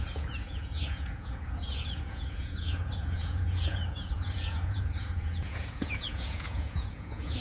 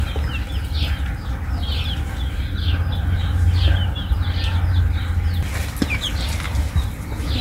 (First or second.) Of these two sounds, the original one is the second